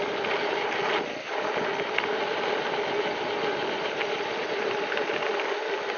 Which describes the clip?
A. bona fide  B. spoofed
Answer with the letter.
A